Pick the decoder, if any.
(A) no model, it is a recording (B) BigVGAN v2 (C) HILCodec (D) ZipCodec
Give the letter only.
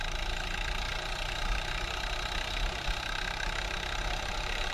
A